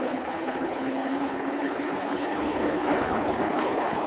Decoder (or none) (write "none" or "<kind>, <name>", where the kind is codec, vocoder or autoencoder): codec, HILCodec